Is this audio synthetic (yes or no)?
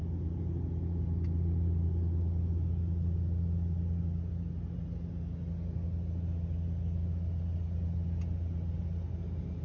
no